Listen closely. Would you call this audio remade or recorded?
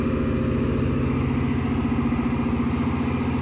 recorded